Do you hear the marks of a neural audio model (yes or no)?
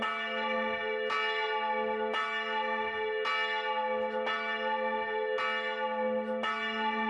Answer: no